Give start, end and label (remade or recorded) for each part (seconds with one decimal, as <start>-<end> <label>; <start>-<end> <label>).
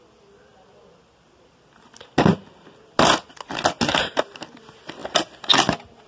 0.0-6.1 recorded